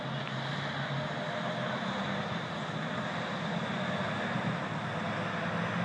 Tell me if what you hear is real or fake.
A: real